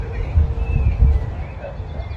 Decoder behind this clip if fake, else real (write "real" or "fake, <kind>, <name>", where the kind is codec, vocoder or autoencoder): real